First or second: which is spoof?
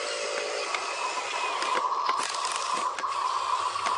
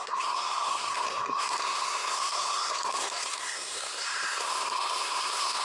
second